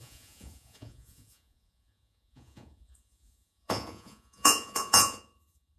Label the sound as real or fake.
fake